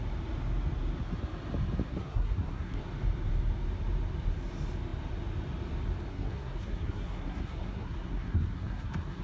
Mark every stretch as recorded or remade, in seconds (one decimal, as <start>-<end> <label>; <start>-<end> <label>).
0.0-1.9 recorded; 1.9-2.8 remade; 2.8-6.1 recorded; 6.1-9.2 remade